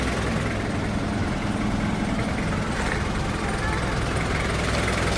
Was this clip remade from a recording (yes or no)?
no